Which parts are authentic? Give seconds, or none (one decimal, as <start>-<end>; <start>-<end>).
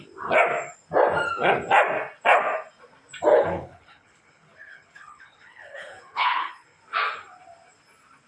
0.0-3.3; 6.8-8.3